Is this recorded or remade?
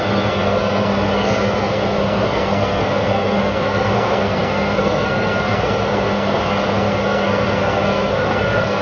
remade